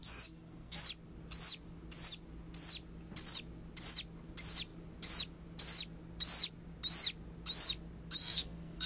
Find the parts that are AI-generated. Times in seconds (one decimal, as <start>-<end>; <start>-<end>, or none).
0.0-0.8; 8.2-8.9

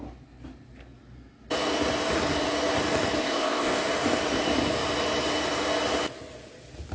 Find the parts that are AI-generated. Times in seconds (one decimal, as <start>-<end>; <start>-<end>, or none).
3.2-3.8

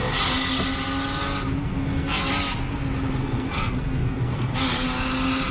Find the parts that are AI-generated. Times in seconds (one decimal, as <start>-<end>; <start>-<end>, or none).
1.6-2.3; 3.2-4.5

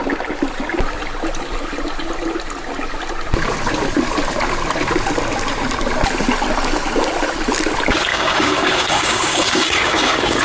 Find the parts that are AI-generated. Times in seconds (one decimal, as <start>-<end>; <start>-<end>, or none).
8.1-10.4